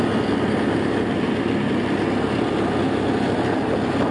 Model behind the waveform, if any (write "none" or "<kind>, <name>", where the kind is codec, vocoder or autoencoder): none